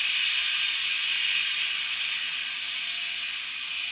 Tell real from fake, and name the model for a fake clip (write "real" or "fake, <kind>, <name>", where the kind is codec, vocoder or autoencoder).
real